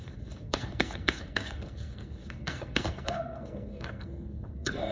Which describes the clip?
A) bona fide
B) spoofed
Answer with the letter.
B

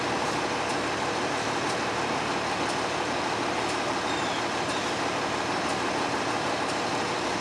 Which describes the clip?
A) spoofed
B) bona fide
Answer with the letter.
B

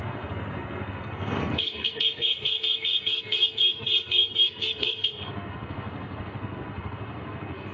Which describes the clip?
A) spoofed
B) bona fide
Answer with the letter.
A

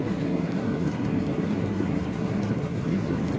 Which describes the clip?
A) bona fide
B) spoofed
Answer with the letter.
B